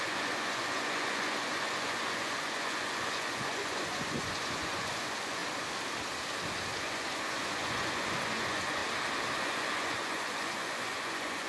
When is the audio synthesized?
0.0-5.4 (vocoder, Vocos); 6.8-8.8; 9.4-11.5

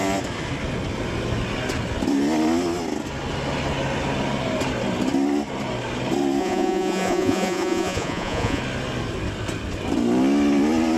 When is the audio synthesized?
6.4-8.6 (vocoder, Vocos)

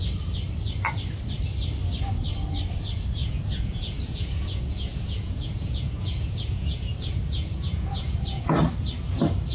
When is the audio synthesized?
3.2-8.4 (vocoder, Vocos)

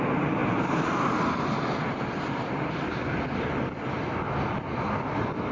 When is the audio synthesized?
none

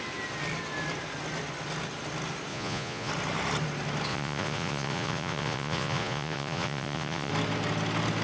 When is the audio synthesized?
2.5-3.1 (vocoder, Vocos); 4.1-7.3